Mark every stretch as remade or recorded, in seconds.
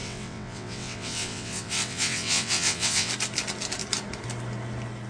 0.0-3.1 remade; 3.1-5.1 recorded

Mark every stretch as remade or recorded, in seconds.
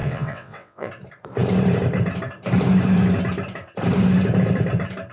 0.0-0.9 remade; 0.9-5.1 recorded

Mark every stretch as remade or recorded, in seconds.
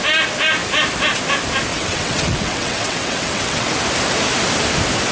0.0-1.7 recorded; 1.7-3.7 remade; 3.7-5.1 recorded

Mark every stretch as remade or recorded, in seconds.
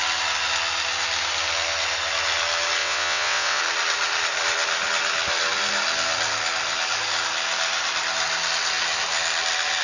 0.0-2.8 recorded; 2.8-3.6 remade; 3.6-9.8 recorded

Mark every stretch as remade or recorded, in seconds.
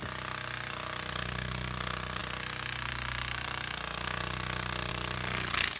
0.0-5.8 recorded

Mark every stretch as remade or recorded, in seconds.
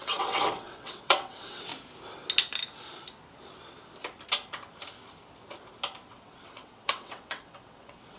0.0-1.7 remade; 1.7-6.1 recorded; 6.1-8.2 remade